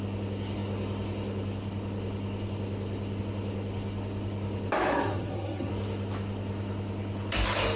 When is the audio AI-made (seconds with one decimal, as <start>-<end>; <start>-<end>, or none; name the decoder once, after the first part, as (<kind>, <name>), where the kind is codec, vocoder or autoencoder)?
4.9-5.7 (codec, SNAC)